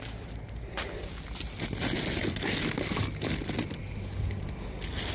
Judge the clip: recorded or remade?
recorded